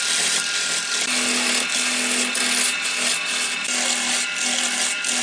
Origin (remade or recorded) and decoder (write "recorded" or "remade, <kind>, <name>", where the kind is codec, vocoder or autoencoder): recorded